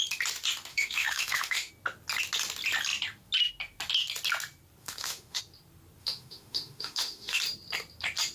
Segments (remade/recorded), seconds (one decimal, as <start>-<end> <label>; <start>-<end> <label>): 0.0-0.7 recorded; 0.7-1.7 remade; 1.7-4.8 recorded; 4.8-5.4 remade; 5.4-6.0 recorded; 6.0-7.4 remade; 7.4-8.3 recorded